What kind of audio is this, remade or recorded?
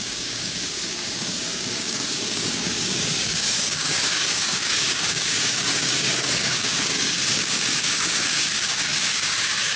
remade